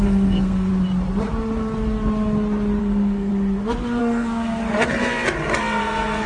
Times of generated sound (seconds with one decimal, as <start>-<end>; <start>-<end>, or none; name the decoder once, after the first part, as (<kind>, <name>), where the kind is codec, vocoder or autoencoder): 0.0-0.7 (codec, SNAC); 2.8-3.3; 4.0-4.6; 5.8-6.3